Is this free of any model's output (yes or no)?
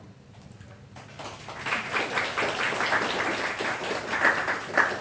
yes